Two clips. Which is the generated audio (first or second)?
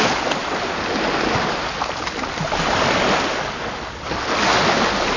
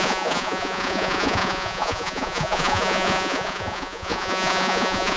second